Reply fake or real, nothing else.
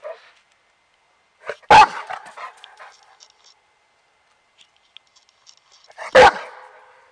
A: real